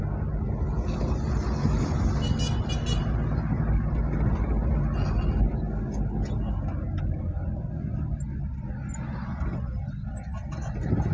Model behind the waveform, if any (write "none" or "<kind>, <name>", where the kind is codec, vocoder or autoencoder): none